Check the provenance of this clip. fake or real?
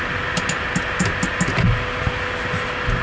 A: real